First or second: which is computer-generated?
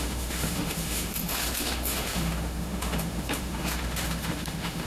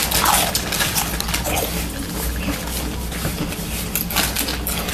first